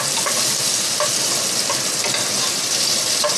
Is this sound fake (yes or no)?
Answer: yes